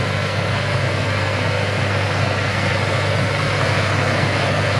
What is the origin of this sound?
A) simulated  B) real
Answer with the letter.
A